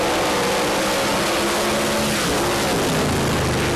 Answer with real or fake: real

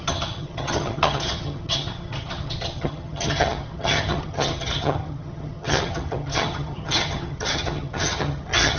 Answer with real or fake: fake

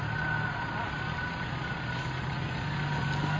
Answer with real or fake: real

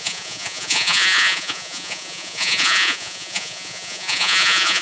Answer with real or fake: fake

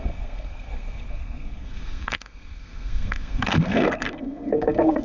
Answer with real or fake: fake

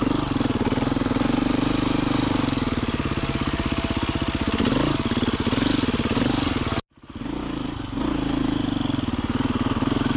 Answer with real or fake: real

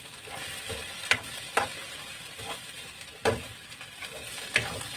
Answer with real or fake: real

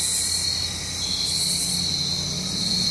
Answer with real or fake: real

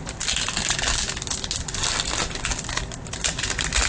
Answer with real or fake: real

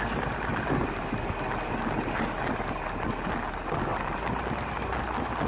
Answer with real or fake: real